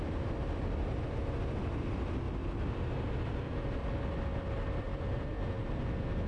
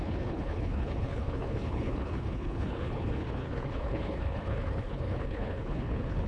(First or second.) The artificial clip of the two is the second